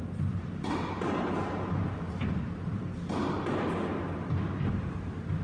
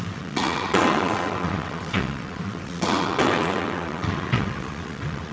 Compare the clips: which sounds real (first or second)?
first